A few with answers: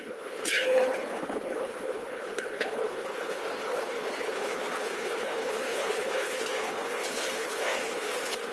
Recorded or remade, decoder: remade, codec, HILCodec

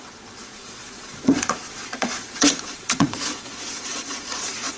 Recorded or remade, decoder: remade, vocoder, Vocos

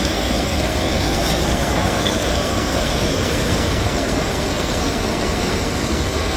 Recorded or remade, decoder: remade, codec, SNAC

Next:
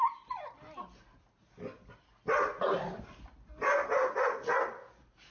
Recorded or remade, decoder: recorded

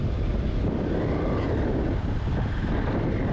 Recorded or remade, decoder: recorded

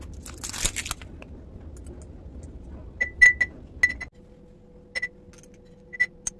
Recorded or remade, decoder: recorded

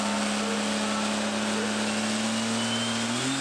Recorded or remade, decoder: recorded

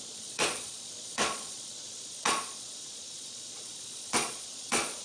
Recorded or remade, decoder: remade, vocoder, Vocos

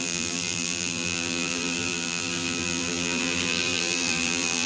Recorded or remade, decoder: remade, vocoder, BigVGAN v2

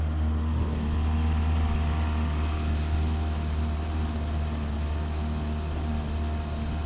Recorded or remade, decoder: recorded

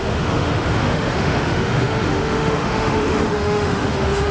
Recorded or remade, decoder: remade, autoencoder, DAC-VAE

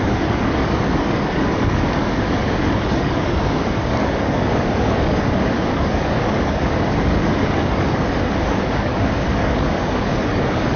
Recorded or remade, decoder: remade, codec, DAC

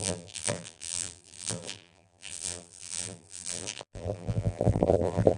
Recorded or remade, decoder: remade, vocoder, BigVGAN v2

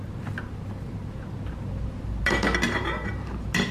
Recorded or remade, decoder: recorded